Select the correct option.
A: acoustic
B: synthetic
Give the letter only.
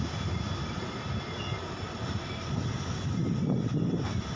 A